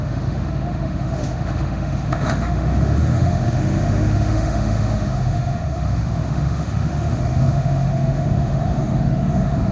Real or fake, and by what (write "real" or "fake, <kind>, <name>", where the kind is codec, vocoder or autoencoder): fake, autoencoder, DAC-VAE